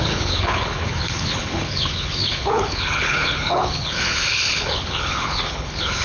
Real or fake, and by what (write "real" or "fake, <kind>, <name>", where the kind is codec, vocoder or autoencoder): fake, codec, HILCodec